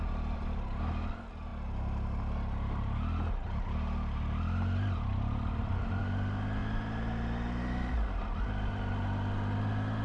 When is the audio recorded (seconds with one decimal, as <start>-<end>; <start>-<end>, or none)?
0.0-10.0